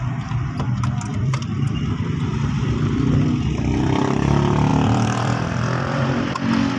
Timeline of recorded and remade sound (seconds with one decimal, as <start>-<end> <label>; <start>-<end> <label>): 0.0-1.1 recorded; 1.1-1.8 remade; 1.8-2.3 recorded; 2.3-3.2 remade; 3.2-4.7 recorded; 4.7-6.2 remade; 6.2-6.8 recorded